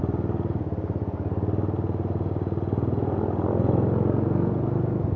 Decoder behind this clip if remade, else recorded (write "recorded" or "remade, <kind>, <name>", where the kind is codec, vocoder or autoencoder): recorded